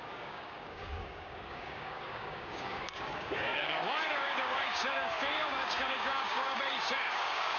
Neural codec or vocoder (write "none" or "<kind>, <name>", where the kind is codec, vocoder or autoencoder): codec, DAC